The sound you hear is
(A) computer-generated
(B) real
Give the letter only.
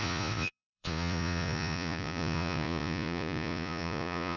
A